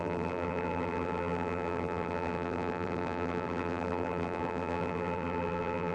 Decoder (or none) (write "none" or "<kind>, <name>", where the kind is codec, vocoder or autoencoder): vocoder, BigVGAN v2